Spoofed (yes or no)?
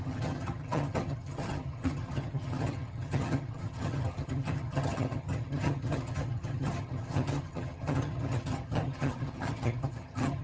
yes